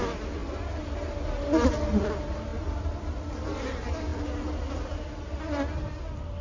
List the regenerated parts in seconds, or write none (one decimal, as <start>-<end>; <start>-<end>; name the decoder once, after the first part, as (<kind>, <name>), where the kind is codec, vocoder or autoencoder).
none